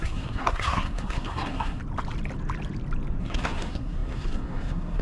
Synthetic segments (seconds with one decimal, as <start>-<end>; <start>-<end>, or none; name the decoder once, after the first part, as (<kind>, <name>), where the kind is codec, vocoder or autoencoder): 0.0-1.8 (codec, SNAC); 3.2-5.0